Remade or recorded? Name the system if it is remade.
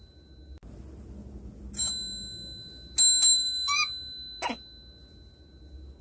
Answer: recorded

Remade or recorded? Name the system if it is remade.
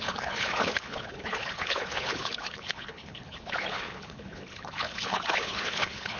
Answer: remade, codec, HILCodec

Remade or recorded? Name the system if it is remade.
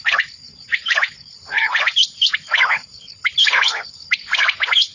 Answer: remade, codec, HILCodec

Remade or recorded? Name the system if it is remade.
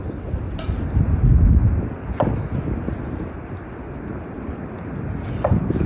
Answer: recorded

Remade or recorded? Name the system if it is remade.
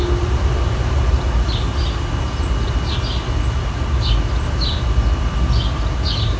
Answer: recorded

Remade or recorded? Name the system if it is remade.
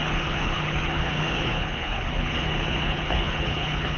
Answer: remade, codec, HILCodec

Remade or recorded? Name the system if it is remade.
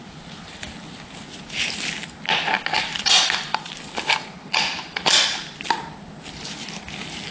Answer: recorded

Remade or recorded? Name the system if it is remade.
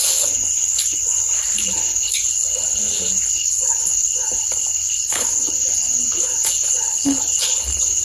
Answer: remade, codec, HILCodec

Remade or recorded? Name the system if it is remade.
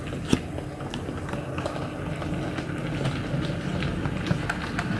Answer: recorded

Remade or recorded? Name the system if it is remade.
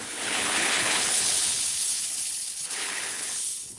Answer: remade, codec, HILCodec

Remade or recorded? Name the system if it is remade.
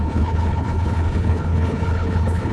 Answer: remade, codec, HILCodec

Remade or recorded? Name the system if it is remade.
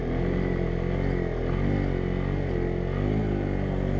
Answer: recorded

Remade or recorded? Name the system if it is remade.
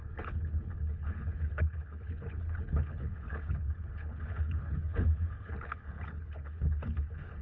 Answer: remade, codec, HILCodec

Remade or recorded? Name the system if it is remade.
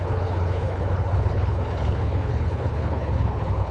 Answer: remade, codec, HILCodec